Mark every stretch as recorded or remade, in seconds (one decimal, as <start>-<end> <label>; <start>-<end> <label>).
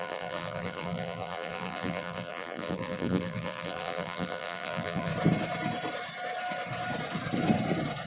0.0-5.1 remade; 5.1-8.1 recorded